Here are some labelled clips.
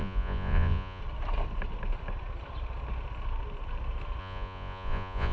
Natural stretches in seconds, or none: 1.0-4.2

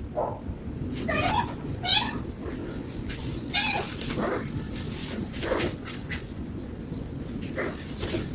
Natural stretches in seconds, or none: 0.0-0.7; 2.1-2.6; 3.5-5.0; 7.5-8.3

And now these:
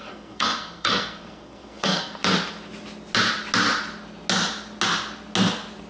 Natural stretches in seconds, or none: 2.2-5.9